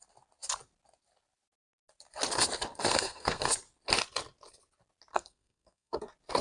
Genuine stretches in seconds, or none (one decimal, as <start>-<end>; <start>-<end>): 0.0-2.9; 3.5-5.1; 6.0-6.4

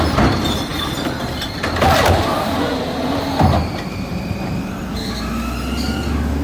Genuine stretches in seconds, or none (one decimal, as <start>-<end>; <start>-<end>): 0.0-0.7; 3.2-4.1; 5.0-6.4